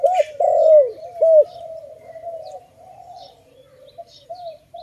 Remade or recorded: remade